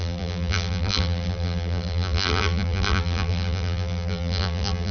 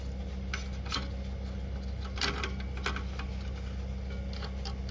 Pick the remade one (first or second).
first